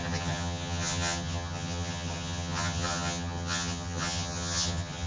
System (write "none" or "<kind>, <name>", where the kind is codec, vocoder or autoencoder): vocoder, HiFi-GAN